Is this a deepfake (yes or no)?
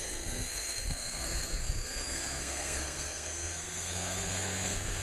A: yes